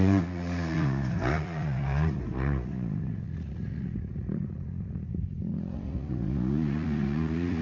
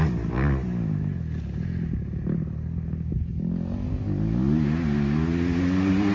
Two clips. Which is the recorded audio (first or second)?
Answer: second